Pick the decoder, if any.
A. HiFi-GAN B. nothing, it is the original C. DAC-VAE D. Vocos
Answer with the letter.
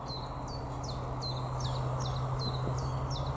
B